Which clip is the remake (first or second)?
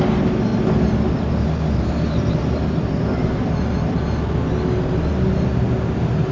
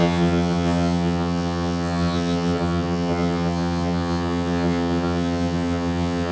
second